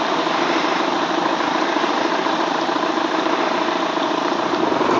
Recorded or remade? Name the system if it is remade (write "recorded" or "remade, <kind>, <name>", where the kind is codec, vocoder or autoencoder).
remade, vocoder, BigVGAN v2